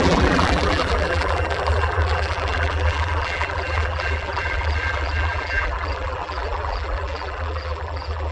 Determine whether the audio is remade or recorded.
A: remade